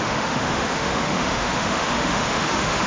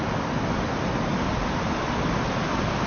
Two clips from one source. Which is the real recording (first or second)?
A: second